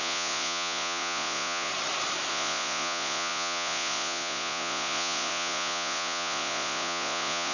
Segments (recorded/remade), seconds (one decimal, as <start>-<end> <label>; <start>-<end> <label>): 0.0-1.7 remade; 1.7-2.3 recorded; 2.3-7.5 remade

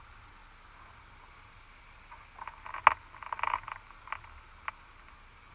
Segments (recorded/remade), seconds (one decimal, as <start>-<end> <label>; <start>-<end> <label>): 0.0-5.5 recorded

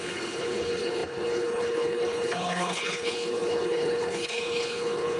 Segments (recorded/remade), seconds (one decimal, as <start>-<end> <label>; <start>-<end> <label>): 0.0-5.2 remade

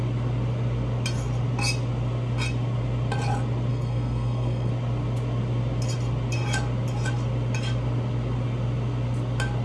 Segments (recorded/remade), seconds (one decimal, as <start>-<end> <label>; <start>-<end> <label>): 0.0-3.7 recorded; 3.7-4.7 remade; 4.7-9.6 recorded